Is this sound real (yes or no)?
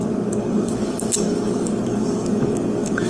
no